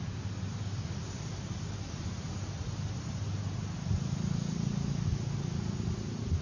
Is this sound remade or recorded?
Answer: recorded